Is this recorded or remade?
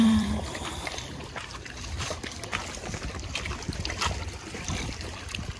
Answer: remade